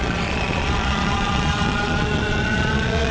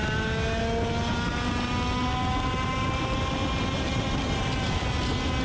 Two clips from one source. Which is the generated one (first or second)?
first